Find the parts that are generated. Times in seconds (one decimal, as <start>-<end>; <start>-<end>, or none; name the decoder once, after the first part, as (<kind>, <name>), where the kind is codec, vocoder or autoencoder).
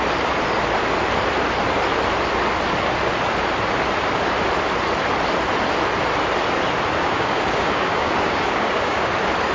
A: 7.0-9.1 (codec, DAC)